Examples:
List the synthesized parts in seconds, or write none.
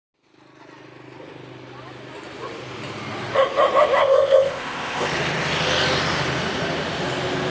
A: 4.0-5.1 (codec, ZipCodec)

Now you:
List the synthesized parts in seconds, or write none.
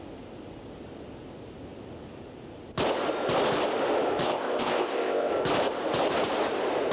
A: 4.2-5.3 (codec, ZipCodec)